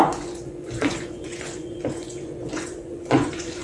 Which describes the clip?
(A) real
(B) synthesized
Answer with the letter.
B